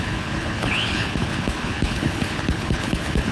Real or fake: fake